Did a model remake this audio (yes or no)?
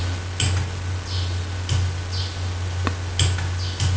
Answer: no